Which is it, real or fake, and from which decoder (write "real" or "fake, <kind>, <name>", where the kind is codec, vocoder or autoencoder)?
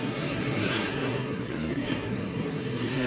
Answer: fake, codec, SNAC